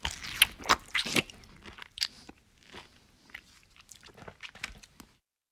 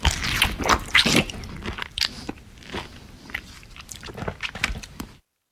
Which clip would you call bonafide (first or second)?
first